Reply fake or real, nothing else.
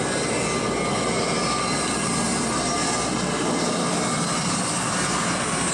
real